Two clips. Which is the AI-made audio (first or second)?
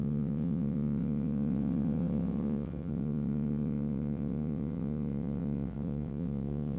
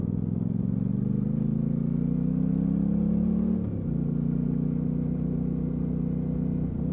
first